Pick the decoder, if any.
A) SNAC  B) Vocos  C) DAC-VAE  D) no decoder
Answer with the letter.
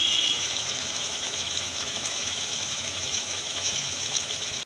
C